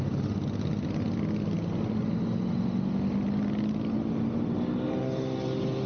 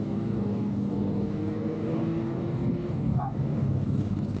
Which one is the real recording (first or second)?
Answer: first